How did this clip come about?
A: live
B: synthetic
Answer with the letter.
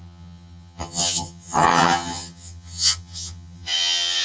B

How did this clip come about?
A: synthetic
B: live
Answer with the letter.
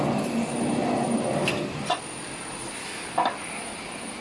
B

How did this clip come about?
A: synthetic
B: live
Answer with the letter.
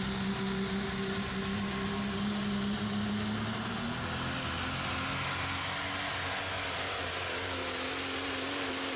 B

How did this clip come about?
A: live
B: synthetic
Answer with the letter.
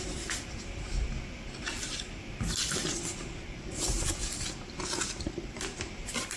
A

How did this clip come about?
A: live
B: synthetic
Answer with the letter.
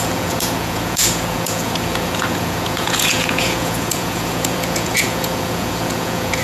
B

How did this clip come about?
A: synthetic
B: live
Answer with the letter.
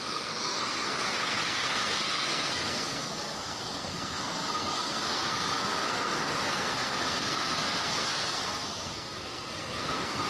A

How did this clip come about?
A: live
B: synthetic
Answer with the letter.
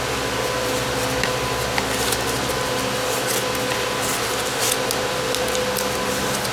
A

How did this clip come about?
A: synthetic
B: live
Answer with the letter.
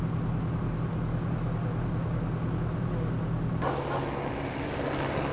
B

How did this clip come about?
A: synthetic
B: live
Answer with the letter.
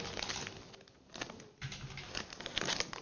B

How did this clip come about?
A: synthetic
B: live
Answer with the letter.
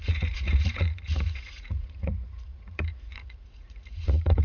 A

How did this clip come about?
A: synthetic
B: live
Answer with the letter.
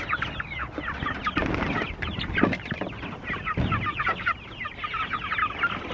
B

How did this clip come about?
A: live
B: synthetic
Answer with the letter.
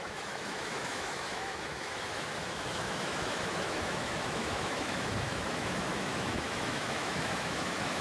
B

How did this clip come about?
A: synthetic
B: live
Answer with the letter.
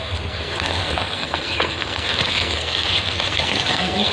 A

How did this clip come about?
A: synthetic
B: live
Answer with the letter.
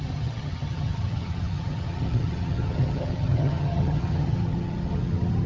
A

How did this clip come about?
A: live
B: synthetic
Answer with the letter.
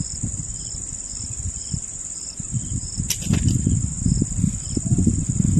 A